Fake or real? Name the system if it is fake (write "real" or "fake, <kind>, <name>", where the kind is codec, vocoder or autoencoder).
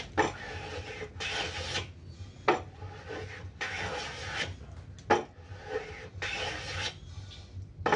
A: real